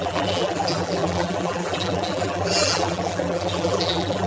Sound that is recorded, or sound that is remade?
remade